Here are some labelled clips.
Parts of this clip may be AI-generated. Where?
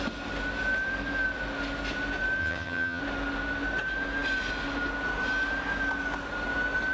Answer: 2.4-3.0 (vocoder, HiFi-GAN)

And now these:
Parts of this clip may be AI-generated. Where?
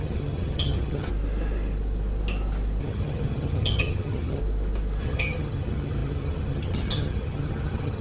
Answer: 0.0-1.1 (vocoder, HiFi-GAN); 2.8-4.4; 5.0-8.0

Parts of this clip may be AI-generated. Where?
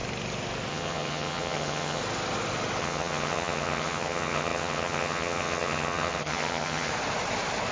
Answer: 0.7-2.0 (vocoder, HiFi-GAN); 2.8-6.9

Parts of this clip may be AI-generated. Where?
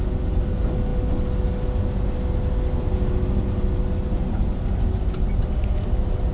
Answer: none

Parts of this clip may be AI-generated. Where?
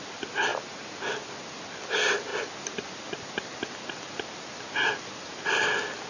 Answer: none